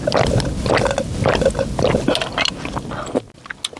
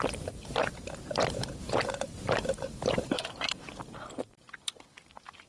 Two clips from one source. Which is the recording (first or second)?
first